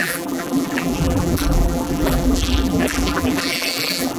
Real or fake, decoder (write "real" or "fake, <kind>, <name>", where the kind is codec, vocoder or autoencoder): fake, vocoder, BigVGAN v2